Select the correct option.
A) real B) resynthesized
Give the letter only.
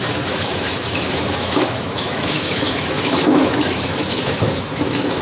B